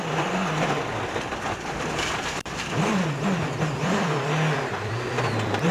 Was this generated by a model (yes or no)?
yes